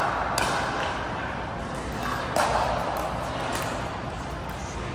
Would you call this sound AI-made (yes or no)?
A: no